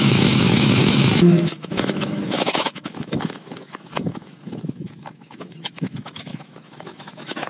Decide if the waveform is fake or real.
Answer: fake